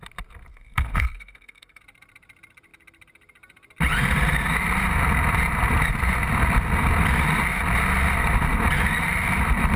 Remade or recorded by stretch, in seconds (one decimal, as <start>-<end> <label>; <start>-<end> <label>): 0.0-0.5 recorded; 0.5-1.8 remade; 1.8-9.8 recorded